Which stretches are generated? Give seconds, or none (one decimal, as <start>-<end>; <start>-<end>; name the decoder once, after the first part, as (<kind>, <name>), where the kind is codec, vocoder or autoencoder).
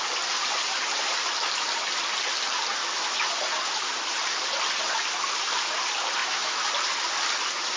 2.8-3.3 (autoencoder, DAC-VAE); 6.2-6.7